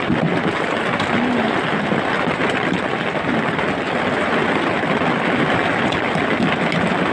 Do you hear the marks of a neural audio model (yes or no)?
no